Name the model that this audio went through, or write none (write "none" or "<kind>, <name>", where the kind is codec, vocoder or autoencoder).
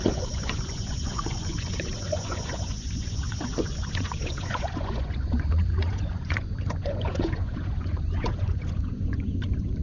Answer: vocoder, Vocos